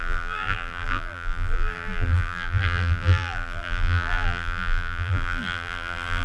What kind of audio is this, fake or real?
fake